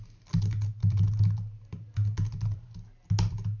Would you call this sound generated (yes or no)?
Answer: no